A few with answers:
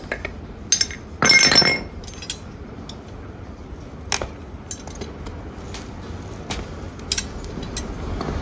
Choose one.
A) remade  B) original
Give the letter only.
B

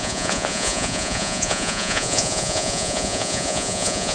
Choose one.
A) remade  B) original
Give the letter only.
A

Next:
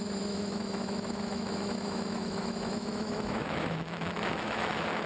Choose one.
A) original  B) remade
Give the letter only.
B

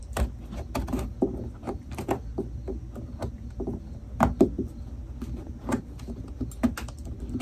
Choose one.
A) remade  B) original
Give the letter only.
B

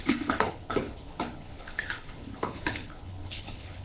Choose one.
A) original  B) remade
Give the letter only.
B